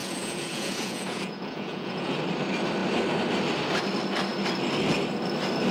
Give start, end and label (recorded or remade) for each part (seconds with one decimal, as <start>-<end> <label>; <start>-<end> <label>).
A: 0.0-2.2 remade; 2.2-5.7 recorded